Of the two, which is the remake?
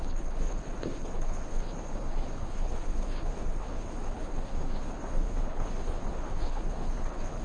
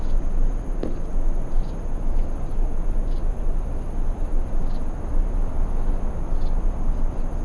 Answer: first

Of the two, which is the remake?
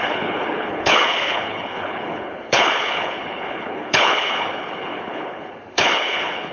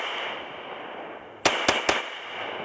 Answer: first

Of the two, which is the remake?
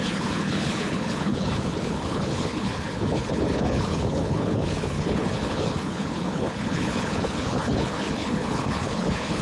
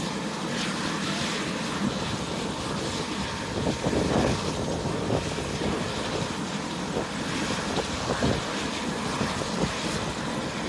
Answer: first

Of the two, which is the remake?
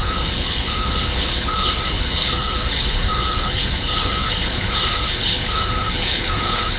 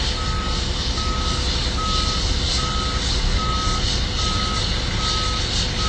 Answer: first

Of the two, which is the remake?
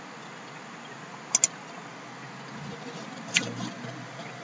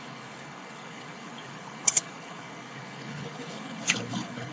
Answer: second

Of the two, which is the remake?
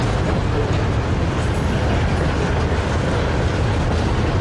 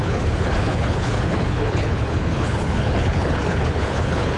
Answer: second